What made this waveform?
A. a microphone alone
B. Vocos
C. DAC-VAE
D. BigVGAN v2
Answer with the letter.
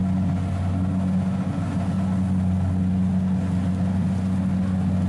A